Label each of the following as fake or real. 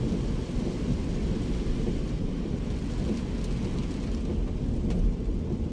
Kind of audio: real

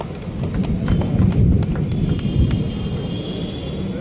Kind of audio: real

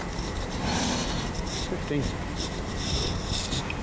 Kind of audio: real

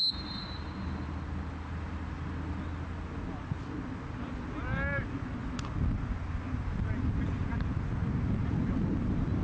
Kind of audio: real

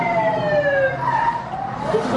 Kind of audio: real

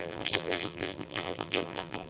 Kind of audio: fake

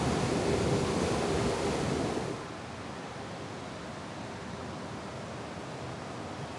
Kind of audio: real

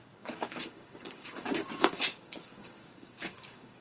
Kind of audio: fake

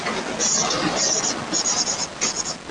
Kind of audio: real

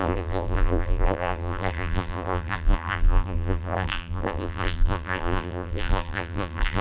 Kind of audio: fake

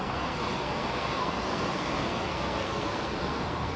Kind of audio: fake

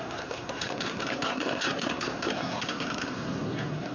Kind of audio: fake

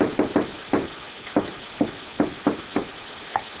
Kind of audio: real